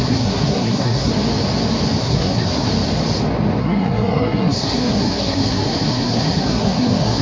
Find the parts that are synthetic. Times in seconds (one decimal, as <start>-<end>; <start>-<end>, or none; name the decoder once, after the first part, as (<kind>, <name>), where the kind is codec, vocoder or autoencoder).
0.0-1.1 (codec, SNAC); 2.0-2.7; 3.6-7.2